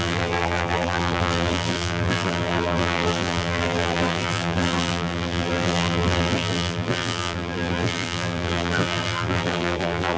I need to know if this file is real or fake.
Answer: fake